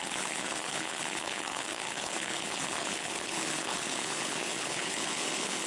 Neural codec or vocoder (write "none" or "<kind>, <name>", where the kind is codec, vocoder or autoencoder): codec, HILCodec